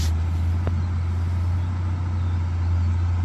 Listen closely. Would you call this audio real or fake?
real